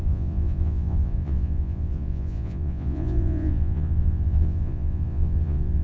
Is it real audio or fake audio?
fake